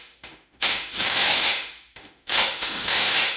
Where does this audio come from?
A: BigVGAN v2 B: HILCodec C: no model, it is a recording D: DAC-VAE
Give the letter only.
D